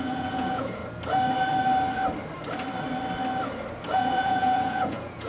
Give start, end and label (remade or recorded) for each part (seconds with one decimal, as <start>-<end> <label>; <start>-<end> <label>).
0.0-0.8 remade; 0.8-4.0 recorded; 4.0-5.3 remade